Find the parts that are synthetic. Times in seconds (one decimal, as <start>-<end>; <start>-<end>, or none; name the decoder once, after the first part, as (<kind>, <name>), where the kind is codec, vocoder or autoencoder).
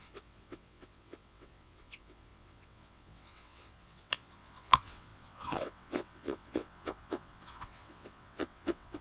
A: 0.0-9.0 (vocoder, WaveNeXt)